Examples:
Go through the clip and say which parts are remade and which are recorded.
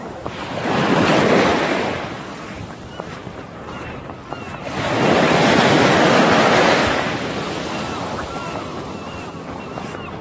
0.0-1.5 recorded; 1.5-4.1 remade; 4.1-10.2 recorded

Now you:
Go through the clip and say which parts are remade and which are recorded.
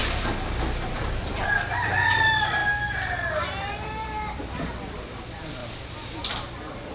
0.0-0.9 recorded; 0.9-2.6 remade; 2.6-4.0 recorded; 4.0-5.6 remade; 5.6-6.3 recorded; 6.3-6.9 remade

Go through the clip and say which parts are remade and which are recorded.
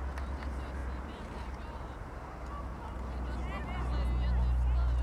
0.0-5.0 recorded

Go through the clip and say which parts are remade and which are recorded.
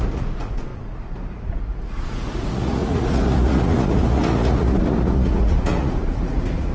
0.0-6.7 remade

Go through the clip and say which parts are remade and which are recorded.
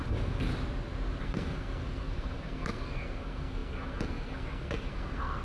0.0-0.5 remade; 0.5-1.2 recorded; 1.2-5.4 remade